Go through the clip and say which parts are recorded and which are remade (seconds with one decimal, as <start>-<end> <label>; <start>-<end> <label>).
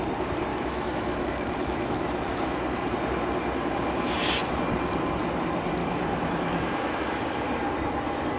0.0-0.5 recorded; 0.5-2.3 remade; 2.3-5.8 recorded; 5.8-7.2 remade; 7.2-8.4 recorded